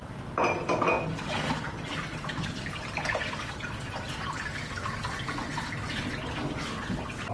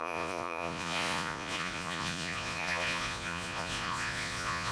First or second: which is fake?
second